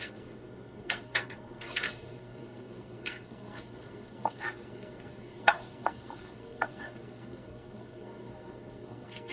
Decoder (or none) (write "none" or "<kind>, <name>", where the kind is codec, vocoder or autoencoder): codec, SNAC